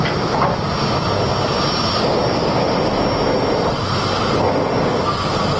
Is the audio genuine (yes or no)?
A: yes